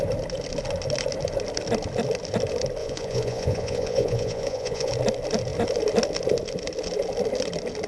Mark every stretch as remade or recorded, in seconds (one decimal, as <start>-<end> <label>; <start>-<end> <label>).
0.0-2.8 recorded; 2.8-4.9 remade; 4.9-7.9 recorded